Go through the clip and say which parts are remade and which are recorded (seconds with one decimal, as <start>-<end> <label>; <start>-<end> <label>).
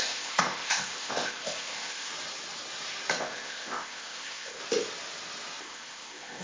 0.0-2.1 remade; 2.1-3.2 recorded; 3.2-4.6 remade; 4.6-5.6 recorded; 5.6-6.4 remade